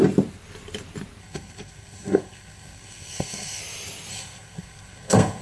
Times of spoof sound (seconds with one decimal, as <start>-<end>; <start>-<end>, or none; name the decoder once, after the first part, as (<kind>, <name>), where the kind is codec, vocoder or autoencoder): 1.2-3.6 (codec, SNAC); 4.1-5.4